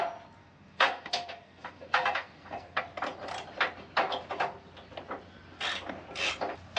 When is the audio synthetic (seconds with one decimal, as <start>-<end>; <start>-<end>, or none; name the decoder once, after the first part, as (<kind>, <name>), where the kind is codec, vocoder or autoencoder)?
0.4-2.8 (codec, SNAC)